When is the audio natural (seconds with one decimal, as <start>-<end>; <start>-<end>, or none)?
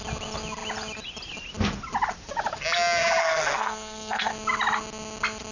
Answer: 0.0-3.2; 4.3-5.5